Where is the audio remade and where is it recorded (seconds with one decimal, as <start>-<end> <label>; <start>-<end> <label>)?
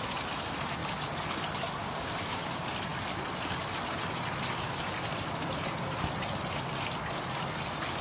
0.0-1.8 recorded; 1.8-2.5 remade; 2.5-8.0 recorded